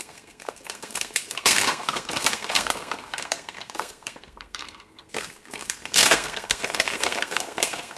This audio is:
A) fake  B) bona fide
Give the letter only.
A